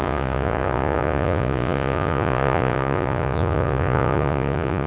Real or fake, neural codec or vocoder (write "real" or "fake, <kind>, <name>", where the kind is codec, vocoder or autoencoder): fake, vocoder, Vocos